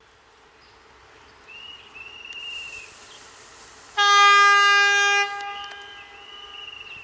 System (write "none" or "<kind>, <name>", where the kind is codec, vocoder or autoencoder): none